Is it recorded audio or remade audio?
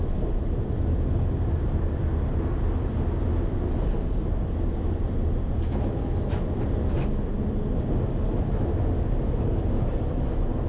recorded